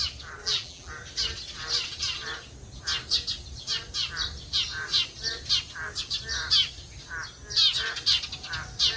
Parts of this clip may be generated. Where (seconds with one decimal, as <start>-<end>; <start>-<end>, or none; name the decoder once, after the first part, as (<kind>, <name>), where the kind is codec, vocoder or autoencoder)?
0.4-0.9 (vocoder, BigVGAN v2)